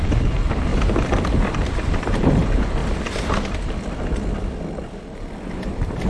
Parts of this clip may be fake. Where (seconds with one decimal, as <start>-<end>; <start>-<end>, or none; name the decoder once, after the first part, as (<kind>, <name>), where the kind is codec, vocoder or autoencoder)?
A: 0.0-0.7 (vocoder, BigVGAN v2); 1.5-2.8; 5.5-6.1

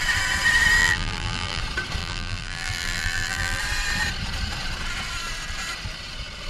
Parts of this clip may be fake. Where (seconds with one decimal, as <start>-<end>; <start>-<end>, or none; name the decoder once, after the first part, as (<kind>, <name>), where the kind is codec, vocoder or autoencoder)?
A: 0.8-1.6 (vocoder, BigVGAN v2); 2.0-3.6

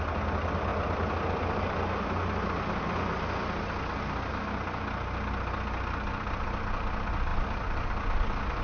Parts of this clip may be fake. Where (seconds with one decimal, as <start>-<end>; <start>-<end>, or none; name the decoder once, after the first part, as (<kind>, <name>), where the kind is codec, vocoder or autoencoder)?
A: 7.3-8.6 (vocoder, BigVGAN v2)

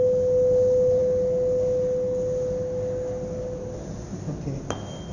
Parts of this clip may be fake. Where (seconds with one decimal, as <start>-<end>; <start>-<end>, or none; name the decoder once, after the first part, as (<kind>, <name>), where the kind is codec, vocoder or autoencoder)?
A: none

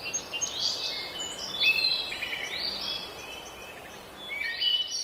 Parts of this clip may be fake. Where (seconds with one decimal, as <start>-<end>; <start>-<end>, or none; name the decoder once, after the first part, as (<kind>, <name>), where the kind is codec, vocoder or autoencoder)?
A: 1.9-2.5 (vocoder, BigVGAN v2)

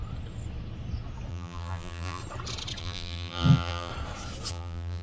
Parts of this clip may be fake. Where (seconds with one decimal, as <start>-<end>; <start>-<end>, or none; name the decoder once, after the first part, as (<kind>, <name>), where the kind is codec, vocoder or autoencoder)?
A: 1.3-2.2 (vocoder, BigVGAN v2); 2.8-3.9; 4.5-5.0

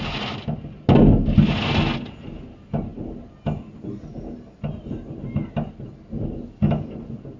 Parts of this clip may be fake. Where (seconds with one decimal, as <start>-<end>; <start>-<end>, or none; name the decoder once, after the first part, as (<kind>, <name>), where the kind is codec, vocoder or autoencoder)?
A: none

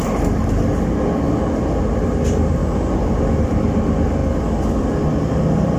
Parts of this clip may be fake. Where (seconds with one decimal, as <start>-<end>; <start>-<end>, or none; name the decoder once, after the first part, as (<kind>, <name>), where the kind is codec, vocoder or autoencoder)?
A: 0.0-0.4 (vocoder, BigVGAN v2); 2.0-2.6; 3.4-4.2